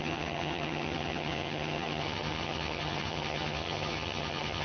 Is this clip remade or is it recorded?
remade